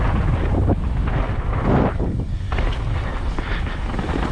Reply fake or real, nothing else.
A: real